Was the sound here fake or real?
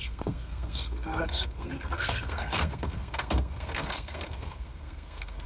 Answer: fake